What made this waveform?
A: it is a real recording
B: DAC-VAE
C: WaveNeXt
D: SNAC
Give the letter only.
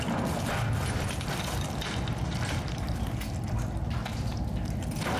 A